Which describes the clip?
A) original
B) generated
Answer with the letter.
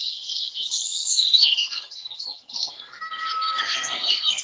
B